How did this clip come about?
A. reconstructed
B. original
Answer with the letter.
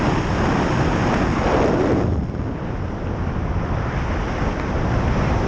B